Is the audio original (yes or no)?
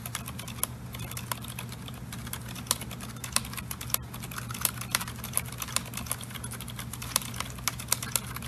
yes